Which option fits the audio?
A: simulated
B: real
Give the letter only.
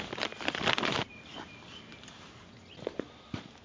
B